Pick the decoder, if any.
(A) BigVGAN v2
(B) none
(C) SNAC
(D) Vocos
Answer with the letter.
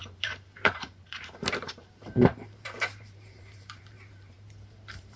A